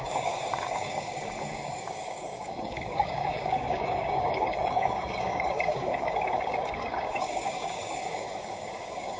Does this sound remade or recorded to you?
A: remade